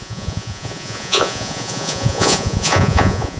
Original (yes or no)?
no